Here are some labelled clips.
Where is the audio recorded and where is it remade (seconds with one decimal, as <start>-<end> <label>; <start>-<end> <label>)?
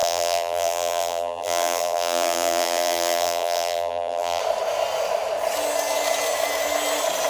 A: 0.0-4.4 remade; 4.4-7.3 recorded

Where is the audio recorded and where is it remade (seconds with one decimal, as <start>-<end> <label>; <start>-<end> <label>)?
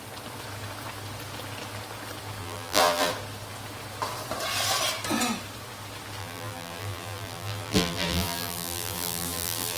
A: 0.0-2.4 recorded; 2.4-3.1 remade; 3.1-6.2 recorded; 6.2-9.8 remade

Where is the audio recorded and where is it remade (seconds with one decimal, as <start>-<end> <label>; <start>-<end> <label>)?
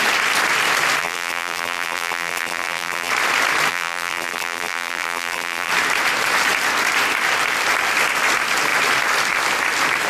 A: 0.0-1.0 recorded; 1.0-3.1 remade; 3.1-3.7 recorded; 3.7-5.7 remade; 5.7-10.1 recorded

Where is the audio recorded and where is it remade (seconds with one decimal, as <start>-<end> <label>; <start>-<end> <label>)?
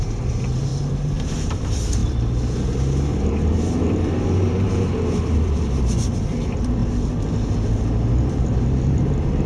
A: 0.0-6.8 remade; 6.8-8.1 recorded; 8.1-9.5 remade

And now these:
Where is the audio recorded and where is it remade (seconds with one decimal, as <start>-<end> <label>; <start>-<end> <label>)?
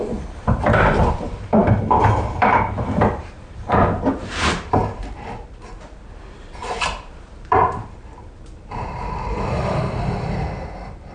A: 0.0-1.6 remade; 1.6-2.1 recorded; 2.1-11.1 remade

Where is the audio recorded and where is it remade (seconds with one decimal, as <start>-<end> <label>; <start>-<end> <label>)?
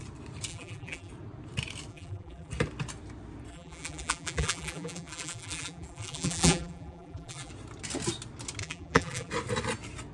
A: 0.0-0.5 recorded; 0.5-1.1 remade; 1.1-1.9 recorded; 1.9-2.5 remade; 2.5-3.5 recorded; 3.5-7.5 remade; 7.5-8.6 recorded; 8.6-9.3 remade; 9.3-10.1 recorded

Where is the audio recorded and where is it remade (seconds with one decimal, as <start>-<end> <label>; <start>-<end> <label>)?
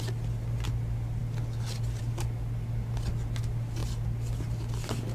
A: 0.0-5.1 recorded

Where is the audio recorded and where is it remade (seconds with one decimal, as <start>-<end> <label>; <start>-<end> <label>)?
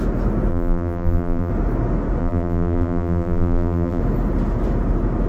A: 0.0-0.5 recorded; 0.5-1.5 remade; 1.5-2.2 recorded; 2.2-4.0 remade; 4.0-5.3 recorded